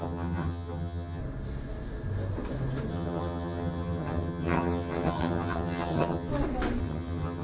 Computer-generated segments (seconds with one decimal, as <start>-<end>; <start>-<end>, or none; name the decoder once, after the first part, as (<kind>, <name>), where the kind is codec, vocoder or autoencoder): 0.0-1.2 (vocoder, HiFi-GAN); 2.9-6.3; 6.8-7.4